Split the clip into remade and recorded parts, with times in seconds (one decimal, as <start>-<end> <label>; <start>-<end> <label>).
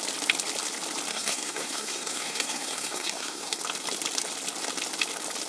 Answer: 0.0-1.1 recorded; 1.1-3.6 remade; 3.6-5.5 recorded